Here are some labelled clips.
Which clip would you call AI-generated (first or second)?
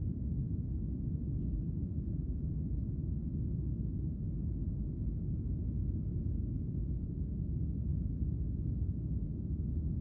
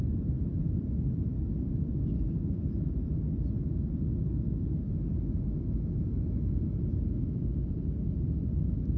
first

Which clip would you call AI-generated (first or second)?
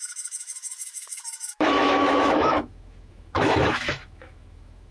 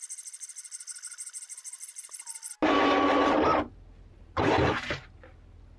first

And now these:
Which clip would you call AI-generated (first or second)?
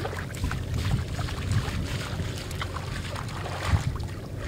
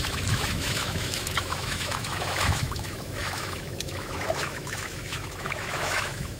second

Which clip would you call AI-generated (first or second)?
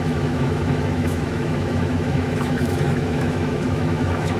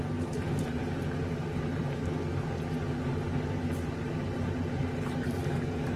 first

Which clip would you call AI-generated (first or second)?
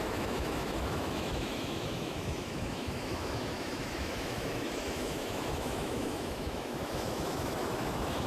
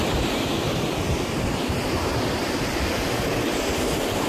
first